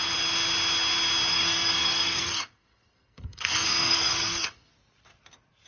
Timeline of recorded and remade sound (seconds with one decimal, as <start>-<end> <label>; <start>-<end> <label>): 0.0-1.3 recorded; 1.3-4.7 remade; 4.7-5.7 recorded